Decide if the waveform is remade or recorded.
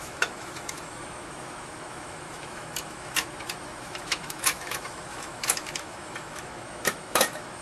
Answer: remade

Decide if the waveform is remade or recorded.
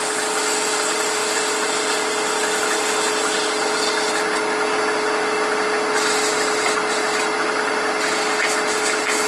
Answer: recorded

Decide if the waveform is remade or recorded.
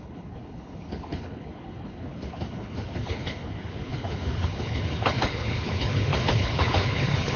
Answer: remade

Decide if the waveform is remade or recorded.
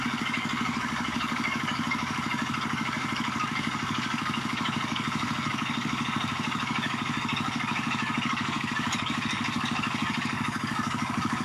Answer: remade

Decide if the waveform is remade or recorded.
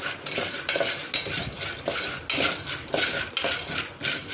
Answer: recorded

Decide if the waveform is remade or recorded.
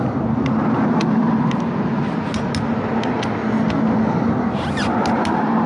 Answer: recorded